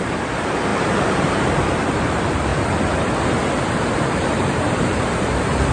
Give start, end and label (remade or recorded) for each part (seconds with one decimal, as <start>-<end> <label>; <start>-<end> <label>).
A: 0.0-2.5 remade; 2.5-4.1 recorded; 4.1-5.7 remade